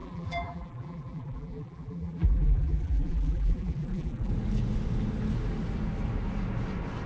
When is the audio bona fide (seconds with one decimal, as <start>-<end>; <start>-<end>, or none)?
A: 4.3-7.1